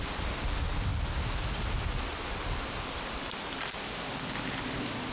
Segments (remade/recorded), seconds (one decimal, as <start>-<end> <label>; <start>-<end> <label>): 0.0-5.1 recorded